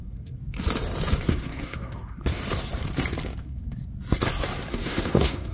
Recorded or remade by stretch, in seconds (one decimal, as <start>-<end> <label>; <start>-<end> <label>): 0.0-0.4 remade; 0.4-1.3 recorded; 1.3-2.4 remade; 2.4-3.4 recorded; 3.4-3.9 remade; 3.9-4.7 recorded; 4.7-5.5 remade

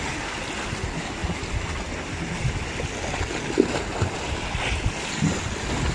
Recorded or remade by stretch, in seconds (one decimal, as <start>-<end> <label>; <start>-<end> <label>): 0.0-5.9 recorded

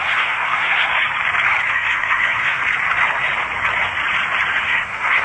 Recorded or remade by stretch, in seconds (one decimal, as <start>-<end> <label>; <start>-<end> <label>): 0.0-0.9 remade; 0.9-1.7 recorded; 1.7-2.6 remade; 2.6-4.6 recorded; 4.6-5.2 remade

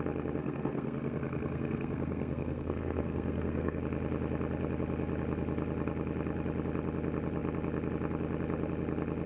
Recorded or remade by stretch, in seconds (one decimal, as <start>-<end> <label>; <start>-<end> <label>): 0.0-0.4 recorded; 0.4-3.8 remade; 3.8-9.3 recorded

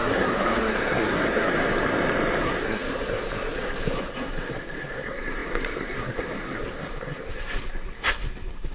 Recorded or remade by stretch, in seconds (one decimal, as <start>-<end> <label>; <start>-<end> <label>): 0.0-1.6 remade; 1.6-2.4 recorded; 2.4-8.7 remade

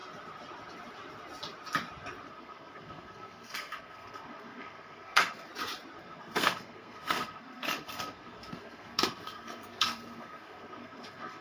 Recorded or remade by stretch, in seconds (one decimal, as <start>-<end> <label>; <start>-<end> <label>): 0.0-2.3 recorded; 2.3-5.5 remade; 5.5-6.0 recorded; 6.0-11.4 remade

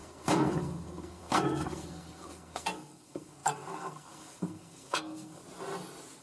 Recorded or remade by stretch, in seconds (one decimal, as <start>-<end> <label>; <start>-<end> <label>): 0.0-5.4 remade; 5.4-6.2 recorded